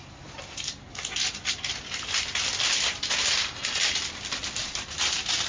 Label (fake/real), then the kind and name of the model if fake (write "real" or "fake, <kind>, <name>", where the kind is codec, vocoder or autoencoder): real